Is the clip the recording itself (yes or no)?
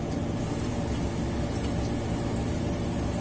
yes